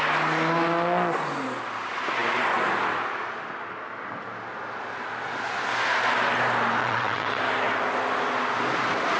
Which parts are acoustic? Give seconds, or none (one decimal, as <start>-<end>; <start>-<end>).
0.0-6.8; 7.4-9.2